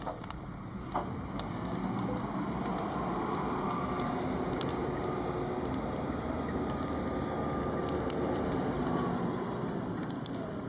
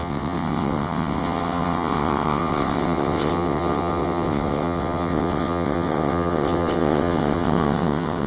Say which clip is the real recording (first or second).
first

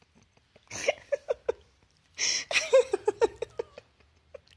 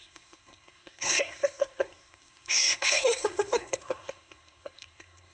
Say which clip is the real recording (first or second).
first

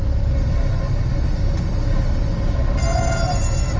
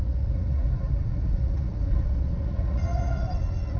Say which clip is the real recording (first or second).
first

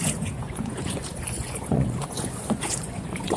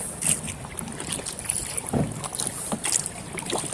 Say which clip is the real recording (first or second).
second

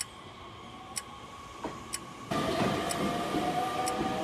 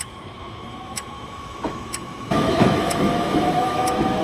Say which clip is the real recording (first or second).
first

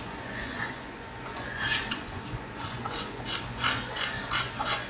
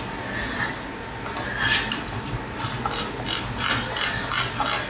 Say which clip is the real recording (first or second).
second